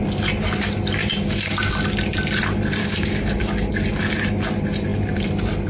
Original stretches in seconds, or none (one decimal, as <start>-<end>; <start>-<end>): 0.0-1.0; 1.7-2.8; 3.7-5.7